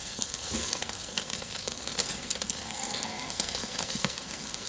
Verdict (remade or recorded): remade